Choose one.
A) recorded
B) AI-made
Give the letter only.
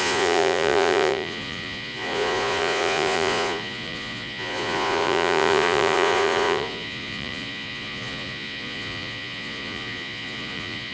B